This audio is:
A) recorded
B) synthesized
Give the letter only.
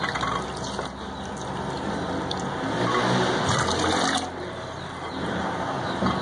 A